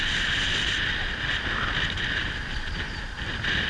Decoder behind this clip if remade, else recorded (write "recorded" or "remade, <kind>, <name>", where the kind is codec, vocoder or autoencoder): recorded